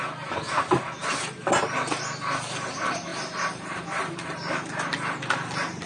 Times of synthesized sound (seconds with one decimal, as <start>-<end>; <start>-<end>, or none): 3.1-5.9